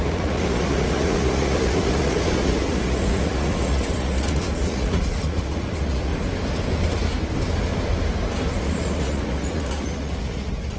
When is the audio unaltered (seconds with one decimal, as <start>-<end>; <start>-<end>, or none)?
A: 6.1-8.6